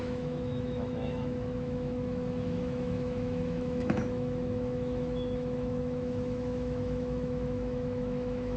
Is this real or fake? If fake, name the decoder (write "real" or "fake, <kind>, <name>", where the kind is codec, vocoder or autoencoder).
fake, autoencoder, DAC-VAE